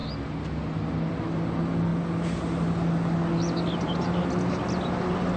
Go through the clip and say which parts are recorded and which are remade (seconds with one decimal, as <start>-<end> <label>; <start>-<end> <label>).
0.0-5.4 recorded